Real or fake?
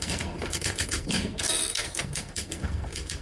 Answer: fake